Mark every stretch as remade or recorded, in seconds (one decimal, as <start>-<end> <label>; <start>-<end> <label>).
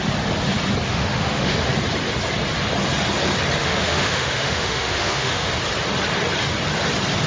0.0-0.9 recorded; 0.9-1.6 remade; 1.6-3.6 recorded; 3.6-5.5 remade; 5.5-7.3 recorded